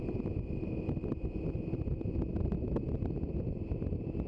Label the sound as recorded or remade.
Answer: recorded